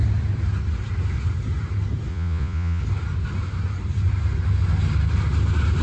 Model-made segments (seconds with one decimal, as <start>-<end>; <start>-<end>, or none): 2.1-2.8